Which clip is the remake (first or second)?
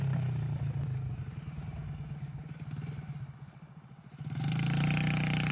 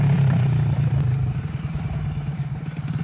second